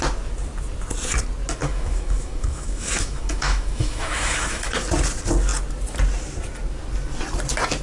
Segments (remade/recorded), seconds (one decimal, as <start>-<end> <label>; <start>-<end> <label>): 0.0-1.6 recorded; 1.6-4.7 remade; 4.7-7.8 recorded